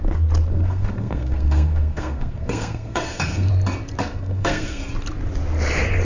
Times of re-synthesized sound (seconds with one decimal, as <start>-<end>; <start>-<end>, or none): 0.5-3.5; 4.0-4.8